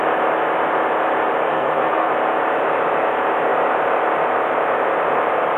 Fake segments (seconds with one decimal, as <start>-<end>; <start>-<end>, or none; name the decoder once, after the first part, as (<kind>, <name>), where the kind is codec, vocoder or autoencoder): 1.4-2.1 (codec, SNAC)